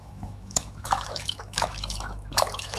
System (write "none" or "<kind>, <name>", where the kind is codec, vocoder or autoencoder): autoencoder, DAC-VAE